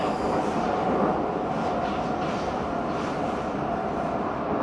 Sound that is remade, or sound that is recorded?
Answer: recorded